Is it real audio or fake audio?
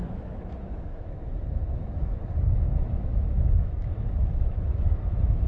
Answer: fake